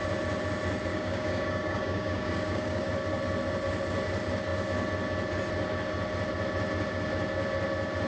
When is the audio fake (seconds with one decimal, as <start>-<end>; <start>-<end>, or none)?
0.9-2.9